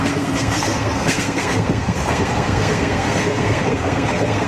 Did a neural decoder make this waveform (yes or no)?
yes